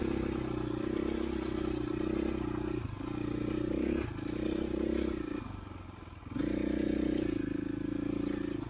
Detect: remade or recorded recorded